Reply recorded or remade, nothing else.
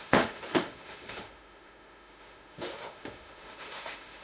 remade